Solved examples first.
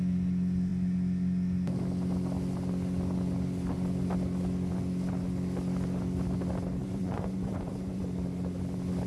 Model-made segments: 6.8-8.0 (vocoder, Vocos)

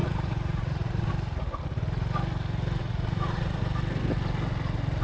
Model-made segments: 0.0-1.1 (vocoder, Vocos); 2.8-3.6

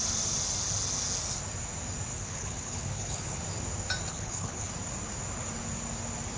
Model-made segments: 2.1-3.4 (codec, HILCodec); 4.1-4.7

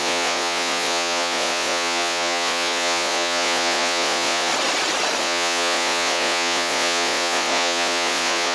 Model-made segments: 0.0-4.5 (vocoder, Vocos); 5.2-8.5

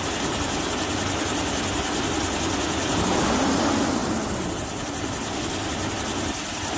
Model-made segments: none

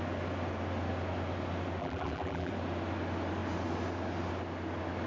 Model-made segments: 1.8-2.5 (vocoder, BigVGAN v2)

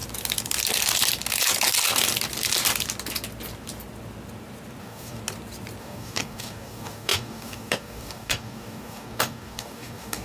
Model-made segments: 4.8-5.2 (codec, DAC); 5.8-10.2